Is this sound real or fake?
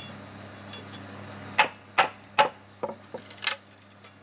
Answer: real